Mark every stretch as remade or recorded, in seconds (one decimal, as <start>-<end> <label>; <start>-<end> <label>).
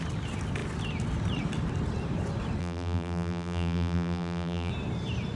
0.0-2.6 recorded; 2.6-4.7 remade; 4.7-5.3 recorded